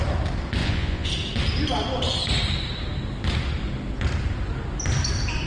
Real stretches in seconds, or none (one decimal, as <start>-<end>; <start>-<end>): 0.0-0.6; 1.1-5.5